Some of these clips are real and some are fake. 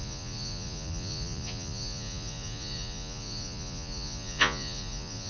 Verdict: fake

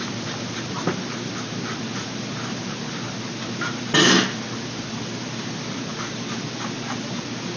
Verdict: real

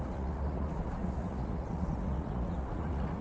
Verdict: fake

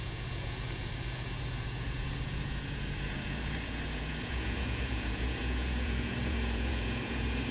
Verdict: fake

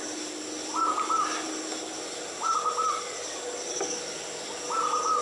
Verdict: real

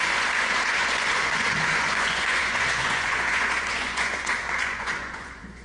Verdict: fake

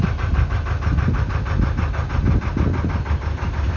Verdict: real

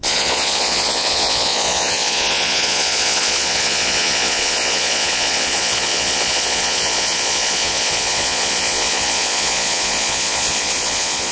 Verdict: fake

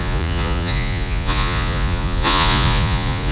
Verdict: fake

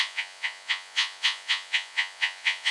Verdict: fake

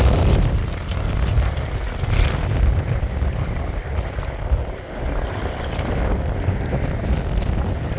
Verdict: real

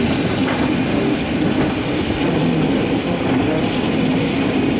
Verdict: real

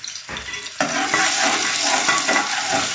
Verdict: real